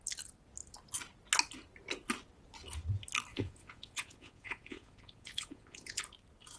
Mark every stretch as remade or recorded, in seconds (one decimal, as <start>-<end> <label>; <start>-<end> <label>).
0.0-3.3 recorded; 3.3-6.0 remade; 6.0-6.6 recorded

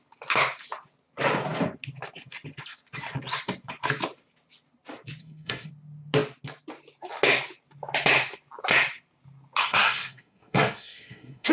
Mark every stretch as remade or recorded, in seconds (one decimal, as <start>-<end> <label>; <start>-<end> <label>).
0.0-5.2 recorded; 5.2-5.7 remade; 5.7-9.6 recorded; 9.6-11.5 remade